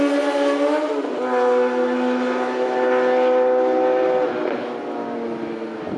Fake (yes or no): no